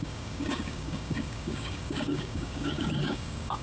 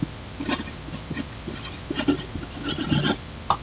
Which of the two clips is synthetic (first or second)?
first